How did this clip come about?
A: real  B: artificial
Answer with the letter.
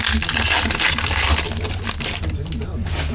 A